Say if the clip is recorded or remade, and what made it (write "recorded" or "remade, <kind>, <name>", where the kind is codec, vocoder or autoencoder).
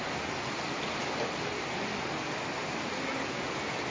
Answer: recorded